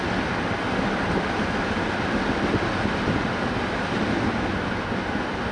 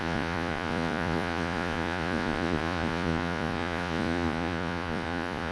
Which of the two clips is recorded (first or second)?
first